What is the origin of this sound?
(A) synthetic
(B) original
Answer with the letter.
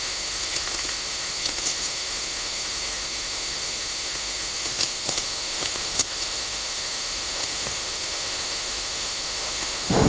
A